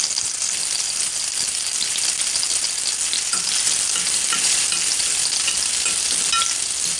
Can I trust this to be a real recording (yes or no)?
yes